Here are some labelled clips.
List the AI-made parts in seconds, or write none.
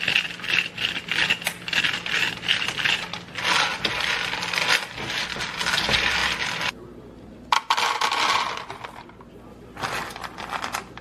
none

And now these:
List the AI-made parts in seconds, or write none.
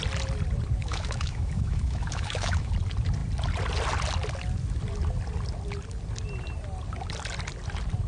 0.8-2.7 (autoencoder, DAC-VAE)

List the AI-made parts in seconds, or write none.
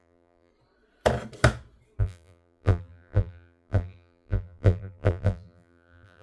0.0-0.5 (vocoder, BigVGAN v2); 2.0-6.2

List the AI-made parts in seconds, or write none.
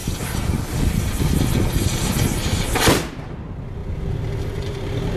none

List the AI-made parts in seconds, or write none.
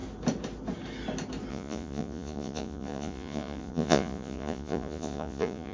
1.5-5.7 (vocoder, Vocos)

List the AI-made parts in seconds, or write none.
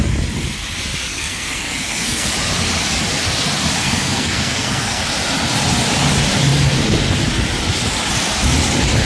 1.1-2.3 (codec, SNAC); 3.8-5.0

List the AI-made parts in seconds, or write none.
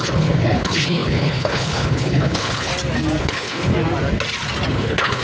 0.0-2.7 (codec, HILCodec); 3.2-3.7; 4.7-5.2